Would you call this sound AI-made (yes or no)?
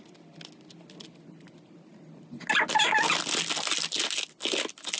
no